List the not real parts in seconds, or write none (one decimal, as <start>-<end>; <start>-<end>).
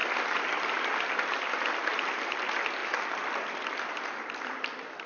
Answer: 0.0-0.8; 2.8-3.9